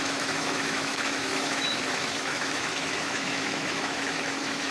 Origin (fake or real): fake